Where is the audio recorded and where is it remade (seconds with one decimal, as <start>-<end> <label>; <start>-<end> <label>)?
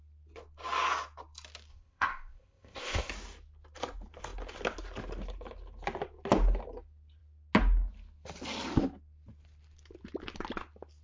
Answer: 0.0-1.7 recorded; 1.7-3.1 remade; 3.1-11.0 recorded